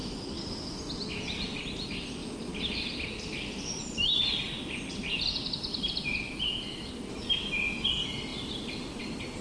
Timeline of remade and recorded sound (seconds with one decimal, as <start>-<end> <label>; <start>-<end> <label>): 0.0-0.8 remade; 0.8-2.2 recorded; 2.2-4.2 remade; 4.2-5.7 recorded; 5.7-6.9 remade; 6.9-9.4 recorded